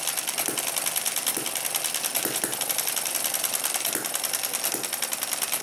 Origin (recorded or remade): recorded